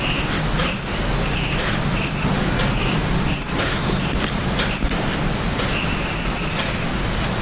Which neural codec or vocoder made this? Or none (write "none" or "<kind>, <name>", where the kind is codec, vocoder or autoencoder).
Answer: none